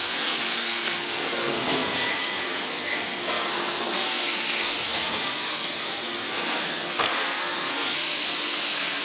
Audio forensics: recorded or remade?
remade